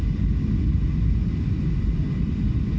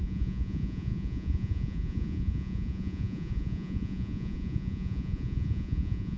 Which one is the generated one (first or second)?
second